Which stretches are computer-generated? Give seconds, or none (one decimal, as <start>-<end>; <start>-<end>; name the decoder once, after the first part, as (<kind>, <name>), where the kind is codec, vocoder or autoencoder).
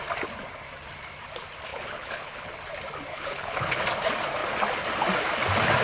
1.7-2.5 (codec, HILCodec); 3.1-3.8